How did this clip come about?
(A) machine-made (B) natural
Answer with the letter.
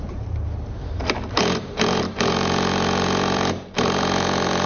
A